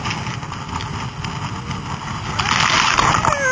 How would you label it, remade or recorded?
recorded